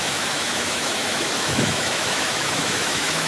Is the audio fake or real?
fake